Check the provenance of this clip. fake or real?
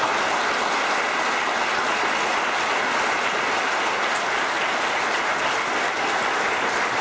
real